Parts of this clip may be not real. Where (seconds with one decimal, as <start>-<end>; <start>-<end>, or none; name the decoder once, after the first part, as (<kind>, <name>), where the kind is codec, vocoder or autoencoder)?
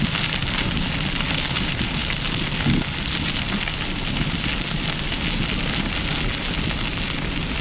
none